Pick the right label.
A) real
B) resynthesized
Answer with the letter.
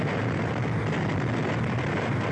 A